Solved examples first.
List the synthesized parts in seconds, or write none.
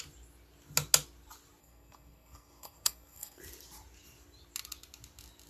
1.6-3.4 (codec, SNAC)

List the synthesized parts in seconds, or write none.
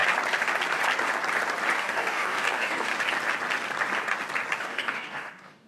1.8-2.9 (codec, DAC); 4.6-5.7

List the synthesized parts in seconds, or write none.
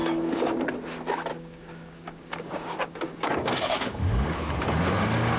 0.0-0.6 (codec, DAC); 1.3-4.5